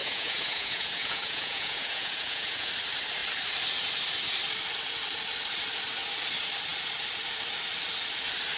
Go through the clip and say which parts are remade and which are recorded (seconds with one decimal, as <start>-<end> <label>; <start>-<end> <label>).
0.0-2.7 remade; 2.7-8.6 recorded